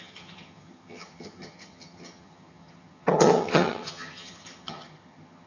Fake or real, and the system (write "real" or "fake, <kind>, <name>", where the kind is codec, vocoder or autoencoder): fake, vocoder, HiFi-GAN